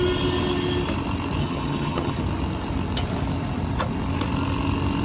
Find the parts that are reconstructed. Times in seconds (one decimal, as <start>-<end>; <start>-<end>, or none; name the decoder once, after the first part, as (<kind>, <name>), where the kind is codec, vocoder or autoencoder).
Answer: 1.4-2.2 (vocoder, HiFi-GAN)